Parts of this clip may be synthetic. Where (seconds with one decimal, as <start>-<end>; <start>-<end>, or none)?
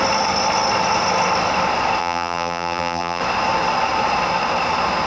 2.0-3.2